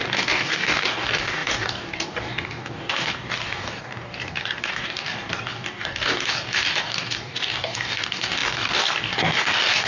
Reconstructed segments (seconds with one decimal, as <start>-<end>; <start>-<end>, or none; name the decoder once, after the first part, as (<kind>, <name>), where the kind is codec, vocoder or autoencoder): 0.0-9.9 (codec, DAC)